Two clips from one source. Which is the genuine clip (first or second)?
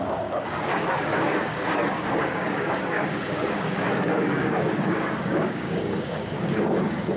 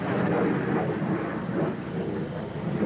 second